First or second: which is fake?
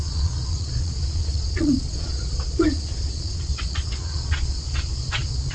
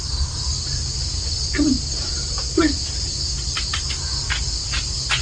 first